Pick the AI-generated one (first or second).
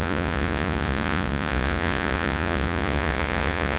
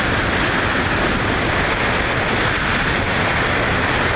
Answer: first